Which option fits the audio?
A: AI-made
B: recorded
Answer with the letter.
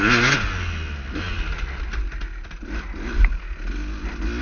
B